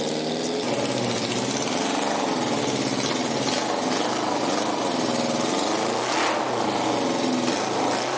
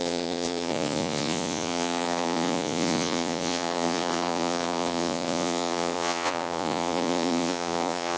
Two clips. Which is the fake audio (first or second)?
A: second